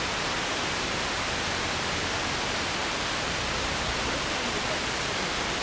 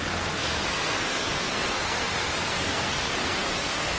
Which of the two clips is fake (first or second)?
second